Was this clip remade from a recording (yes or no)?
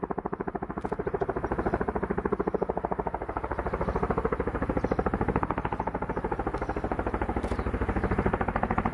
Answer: yes